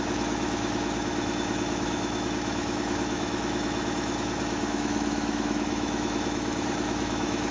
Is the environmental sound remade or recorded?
remade